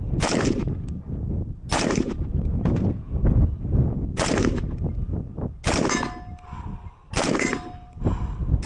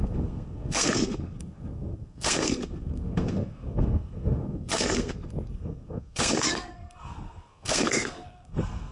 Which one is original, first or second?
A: first